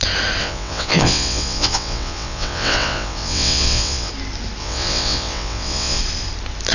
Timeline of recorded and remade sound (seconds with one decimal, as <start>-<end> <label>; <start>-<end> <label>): 0.0-0.4 recorded; 0.4-4.1 remade; 4.1-4.6 recorded; 4.6-6.0 remade; 6.0-6.7 recorded